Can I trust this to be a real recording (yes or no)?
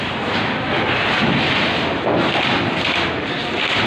yes